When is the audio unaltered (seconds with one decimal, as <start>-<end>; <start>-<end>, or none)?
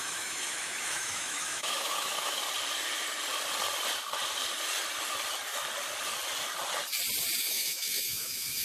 2.4-7.4